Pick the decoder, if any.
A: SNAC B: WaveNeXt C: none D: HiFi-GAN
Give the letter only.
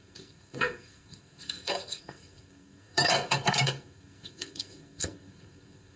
A